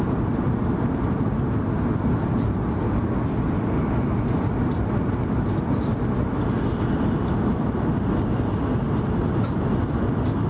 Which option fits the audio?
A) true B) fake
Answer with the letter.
A